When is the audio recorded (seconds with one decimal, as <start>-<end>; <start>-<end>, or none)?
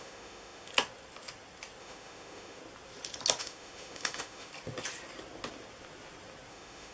0.7-1.8; 2.6-3.4; 4.5-6.5